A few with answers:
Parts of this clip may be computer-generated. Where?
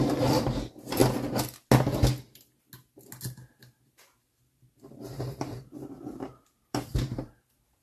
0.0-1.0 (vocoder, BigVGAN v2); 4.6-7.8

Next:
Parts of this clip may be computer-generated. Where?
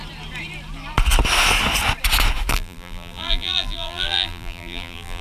2.5-5.2 (vocoder, BigVGAN v2)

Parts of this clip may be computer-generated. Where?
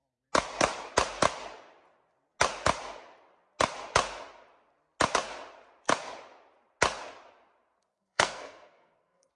7.9-9.3 (codec, SNAC)